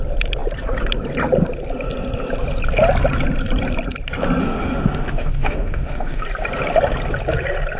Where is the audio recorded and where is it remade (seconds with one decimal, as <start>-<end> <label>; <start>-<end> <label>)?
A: 0.0-4.4 recorded; 4.4-6.2 remade; 6.2-7.8 recorded